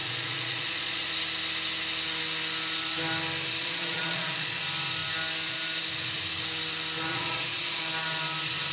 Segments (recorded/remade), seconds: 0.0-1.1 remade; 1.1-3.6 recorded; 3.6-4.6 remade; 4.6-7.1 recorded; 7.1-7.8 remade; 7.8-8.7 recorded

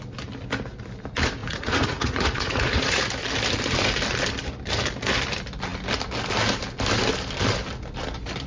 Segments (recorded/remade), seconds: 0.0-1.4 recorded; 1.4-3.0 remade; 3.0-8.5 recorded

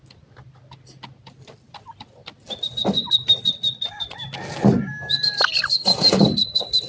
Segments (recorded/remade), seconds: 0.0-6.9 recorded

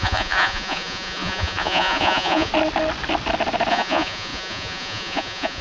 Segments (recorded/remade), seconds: 0.0-2.5 remade; 2.5-3.7 recorded; 3.7-5.6 remade